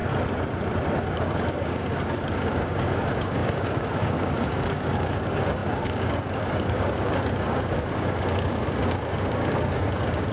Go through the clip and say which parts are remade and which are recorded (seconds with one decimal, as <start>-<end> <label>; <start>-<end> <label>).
0.0-1.0 recorded; 1.0-10.3 remade